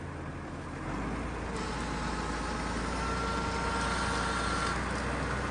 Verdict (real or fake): real